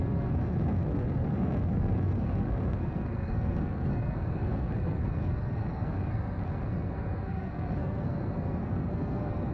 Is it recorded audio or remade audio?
remade